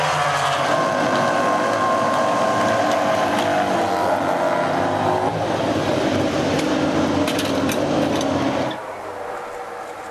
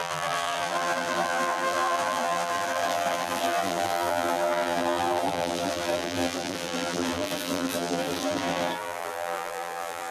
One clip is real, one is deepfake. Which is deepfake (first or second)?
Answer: second